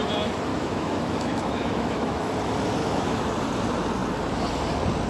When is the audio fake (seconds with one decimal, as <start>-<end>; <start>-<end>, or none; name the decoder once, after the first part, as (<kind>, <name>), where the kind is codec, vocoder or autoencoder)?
0.5-2.3 (autoencoder, DAC-VAE); 2.8-3.4